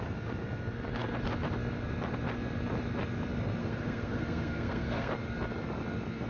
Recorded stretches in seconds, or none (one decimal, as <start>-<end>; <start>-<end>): 0.0-3.6; 5.1-6.3